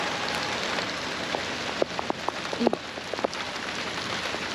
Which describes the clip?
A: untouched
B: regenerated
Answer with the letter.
A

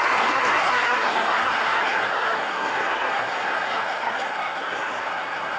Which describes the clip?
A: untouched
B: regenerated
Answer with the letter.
B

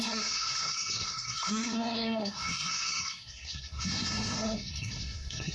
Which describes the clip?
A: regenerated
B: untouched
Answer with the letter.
A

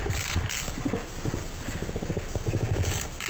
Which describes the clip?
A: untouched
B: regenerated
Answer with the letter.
A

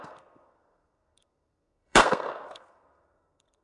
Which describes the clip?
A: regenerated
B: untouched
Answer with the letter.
A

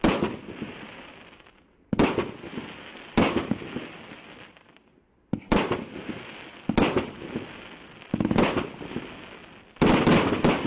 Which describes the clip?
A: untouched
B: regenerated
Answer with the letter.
A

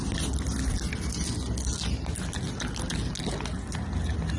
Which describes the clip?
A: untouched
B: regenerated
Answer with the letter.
A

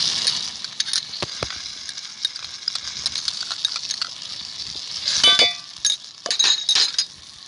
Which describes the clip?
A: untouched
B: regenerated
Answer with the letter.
A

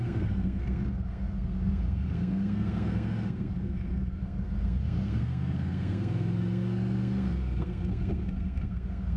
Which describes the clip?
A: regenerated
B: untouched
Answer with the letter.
A